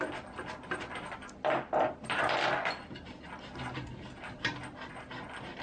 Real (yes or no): yes